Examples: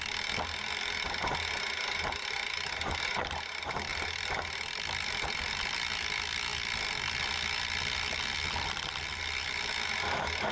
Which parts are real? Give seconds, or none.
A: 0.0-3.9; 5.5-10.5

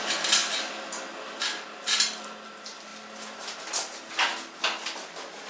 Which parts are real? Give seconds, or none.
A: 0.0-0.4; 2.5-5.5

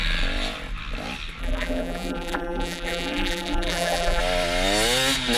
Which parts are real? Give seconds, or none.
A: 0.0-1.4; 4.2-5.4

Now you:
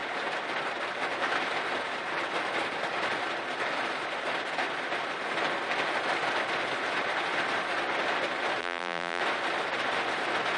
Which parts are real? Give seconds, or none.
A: 0.0-8.6; 9.2-10.6

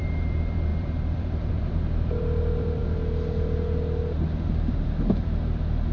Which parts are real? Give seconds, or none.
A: 2.8-4.5

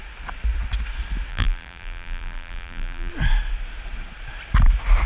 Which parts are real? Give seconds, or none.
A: 0.0-1.3; 3.1-5.1

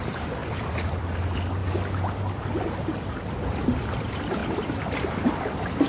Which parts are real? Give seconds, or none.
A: 0.0-5.9

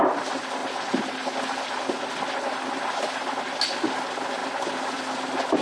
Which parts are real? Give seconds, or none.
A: 0.0-5.6